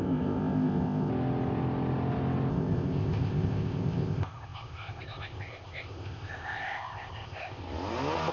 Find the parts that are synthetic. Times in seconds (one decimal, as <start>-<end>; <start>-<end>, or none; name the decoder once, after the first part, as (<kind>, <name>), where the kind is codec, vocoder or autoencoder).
0.0-1.1 (codec, ZipCodec); 2.5-7.6